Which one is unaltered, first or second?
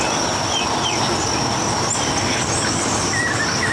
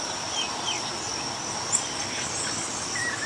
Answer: first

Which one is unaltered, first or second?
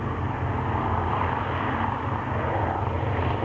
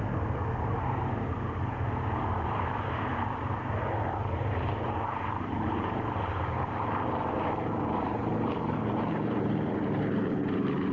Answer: first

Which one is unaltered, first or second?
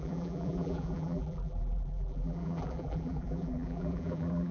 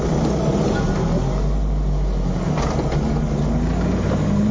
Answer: second